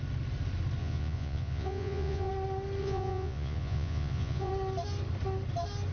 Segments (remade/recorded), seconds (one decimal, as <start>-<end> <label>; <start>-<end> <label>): 0.0-0.8 recorded; 0.8-2.3 remade; 2.3-2.8 recorded; 2.8-4.5 remade; 4.5-5.9 recorded